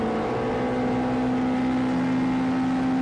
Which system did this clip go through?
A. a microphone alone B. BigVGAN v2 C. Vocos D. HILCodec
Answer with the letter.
A